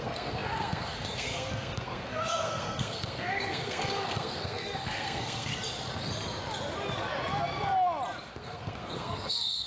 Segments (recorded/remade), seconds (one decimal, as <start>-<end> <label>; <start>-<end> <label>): 0.0-5.5 remade; 5.5-8.3 recorded; 8.3-9.7 remade